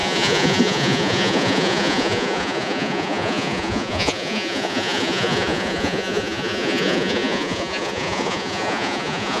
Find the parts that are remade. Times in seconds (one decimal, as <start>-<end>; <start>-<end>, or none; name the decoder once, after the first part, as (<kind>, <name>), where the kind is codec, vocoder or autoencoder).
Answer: 0.0-9.4 (vocoder, Vocos)